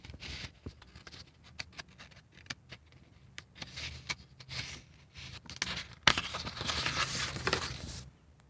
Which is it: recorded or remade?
recorded